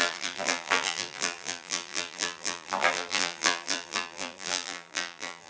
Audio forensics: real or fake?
fake